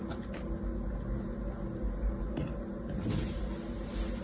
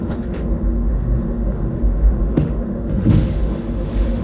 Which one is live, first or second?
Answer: first